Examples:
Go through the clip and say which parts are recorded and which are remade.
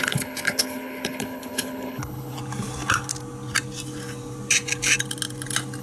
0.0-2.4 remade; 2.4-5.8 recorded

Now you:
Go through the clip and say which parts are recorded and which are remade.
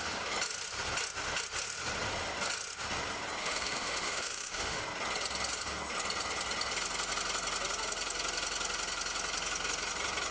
0.0-3.4 recorded; 3.4-4.8 remade; 4.8-10.3 recorded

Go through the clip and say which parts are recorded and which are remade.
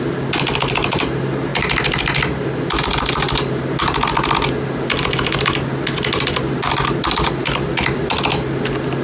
0.0-9.0 recorded